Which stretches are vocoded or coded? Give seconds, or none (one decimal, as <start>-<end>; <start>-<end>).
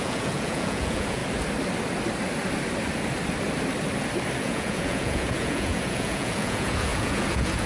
0.0-1.2; 4.4-7.7